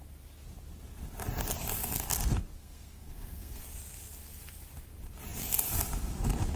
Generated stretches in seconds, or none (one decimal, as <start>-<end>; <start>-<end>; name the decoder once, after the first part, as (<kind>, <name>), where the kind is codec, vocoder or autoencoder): 2.6-3.6 (codec, SNAC)